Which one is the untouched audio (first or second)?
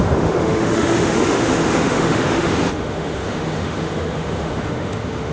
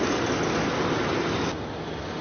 second